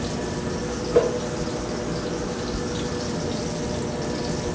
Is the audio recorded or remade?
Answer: recorded